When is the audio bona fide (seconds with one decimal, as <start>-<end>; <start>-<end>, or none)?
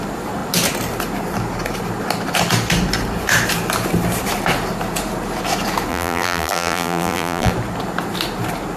0.0-5.9; 7.5-8.8